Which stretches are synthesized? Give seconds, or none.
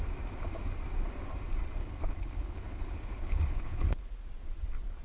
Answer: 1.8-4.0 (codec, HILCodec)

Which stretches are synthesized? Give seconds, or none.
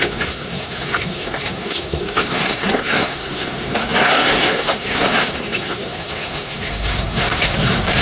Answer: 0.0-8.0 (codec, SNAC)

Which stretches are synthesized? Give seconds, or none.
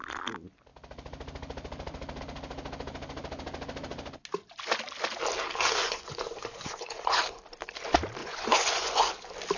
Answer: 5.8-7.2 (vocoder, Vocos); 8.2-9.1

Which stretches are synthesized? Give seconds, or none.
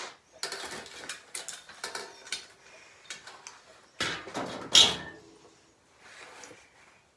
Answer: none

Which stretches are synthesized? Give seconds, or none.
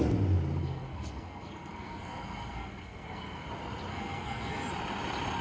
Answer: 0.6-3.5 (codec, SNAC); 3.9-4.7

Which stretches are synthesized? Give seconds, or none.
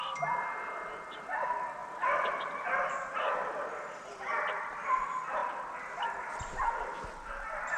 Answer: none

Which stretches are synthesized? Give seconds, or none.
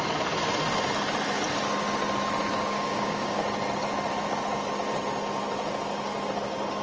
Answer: 2.5-3.5 (codec, DAC)